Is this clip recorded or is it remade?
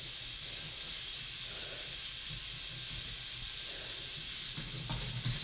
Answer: recorded